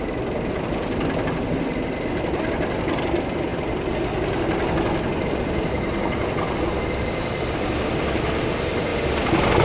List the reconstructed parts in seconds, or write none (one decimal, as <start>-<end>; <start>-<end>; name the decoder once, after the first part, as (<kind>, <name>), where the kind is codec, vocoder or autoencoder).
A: none